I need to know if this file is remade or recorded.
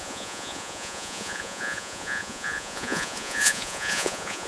remade